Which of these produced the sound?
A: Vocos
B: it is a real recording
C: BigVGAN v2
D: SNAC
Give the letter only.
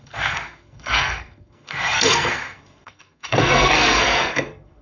D